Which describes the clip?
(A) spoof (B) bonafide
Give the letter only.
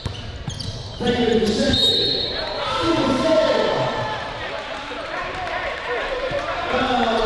A